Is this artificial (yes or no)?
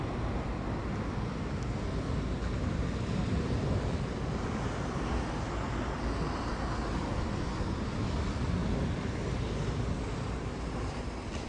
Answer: no